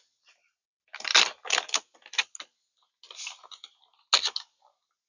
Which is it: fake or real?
real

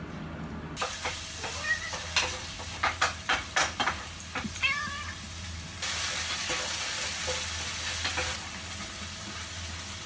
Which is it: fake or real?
real